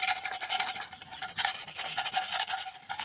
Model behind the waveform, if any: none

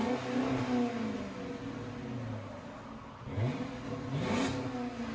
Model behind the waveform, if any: none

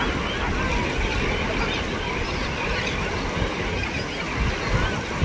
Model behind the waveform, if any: none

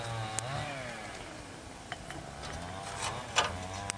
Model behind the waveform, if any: none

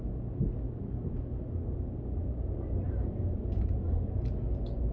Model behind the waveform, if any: none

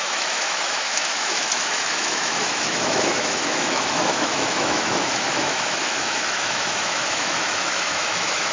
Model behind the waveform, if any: autoencoder, DAC-VAE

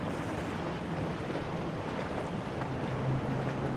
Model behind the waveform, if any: none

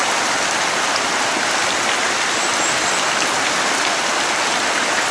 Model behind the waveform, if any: none